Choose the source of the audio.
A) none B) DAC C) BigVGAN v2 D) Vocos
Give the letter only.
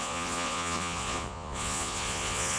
D